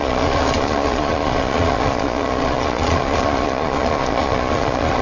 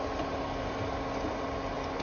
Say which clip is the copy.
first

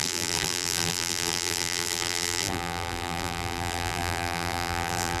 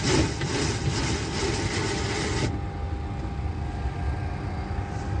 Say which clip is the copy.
first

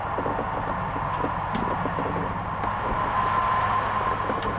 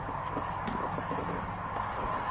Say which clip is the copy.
second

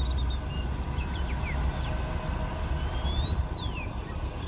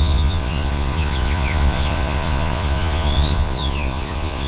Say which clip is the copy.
second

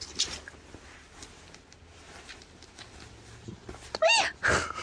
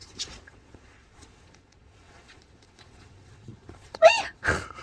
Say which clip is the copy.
second